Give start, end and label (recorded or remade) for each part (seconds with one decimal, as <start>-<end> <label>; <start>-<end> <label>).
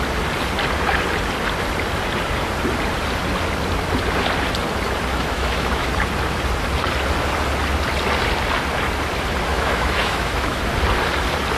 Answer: 0.0-5.1 recorded; 5.1-5.9 remade; 5.9-9.5 recorded; 9.5-10.6 remade; 10.6-11.6 recorded